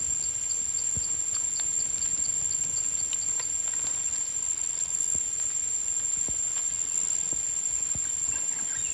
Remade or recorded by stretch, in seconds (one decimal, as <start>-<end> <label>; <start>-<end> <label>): 0.0-4.4 recorded; 4.4-5.2 remade; 5.2-6.7 recorded; 6.7-7.3 remade; 7.3-8.9 recorded